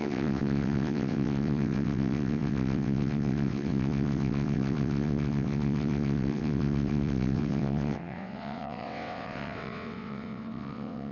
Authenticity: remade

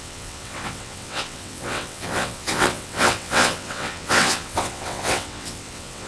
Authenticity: remade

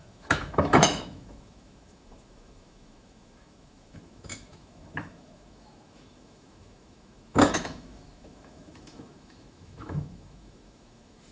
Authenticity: remade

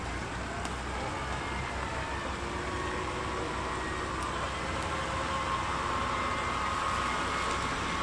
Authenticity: recorded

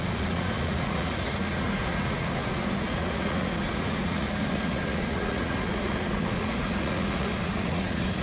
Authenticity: remade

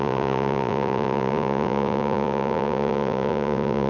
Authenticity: remade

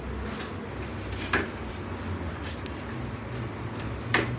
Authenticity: recorded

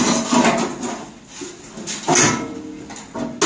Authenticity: recorded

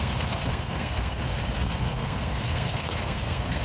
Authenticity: remade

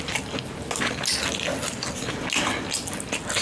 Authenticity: recorded